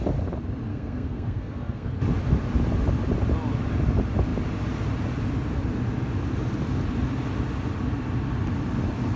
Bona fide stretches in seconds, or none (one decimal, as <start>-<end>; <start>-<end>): 0.0-0.7; 1.9-9.2